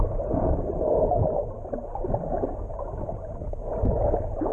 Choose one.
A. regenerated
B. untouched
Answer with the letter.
B